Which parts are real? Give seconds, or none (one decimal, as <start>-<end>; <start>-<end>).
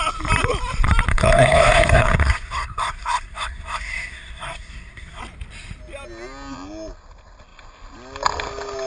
0.0-1.1; 5.2-8.9